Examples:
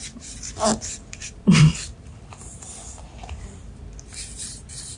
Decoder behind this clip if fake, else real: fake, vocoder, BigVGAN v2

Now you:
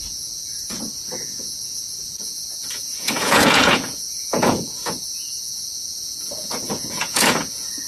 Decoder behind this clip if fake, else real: fake, vocoder, Vocos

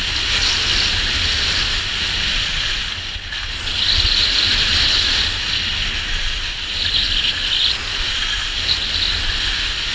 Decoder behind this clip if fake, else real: real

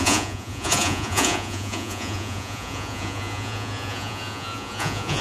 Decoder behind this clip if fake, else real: fake, vocoder, Vocos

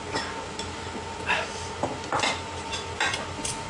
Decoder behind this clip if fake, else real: real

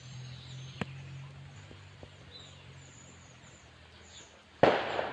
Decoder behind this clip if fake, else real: real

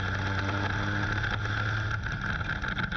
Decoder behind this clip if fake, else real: real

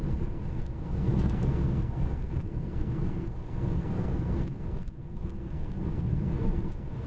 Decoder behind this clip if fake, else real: fake, codec, SNAC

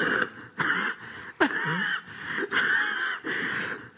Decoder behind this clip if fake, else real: real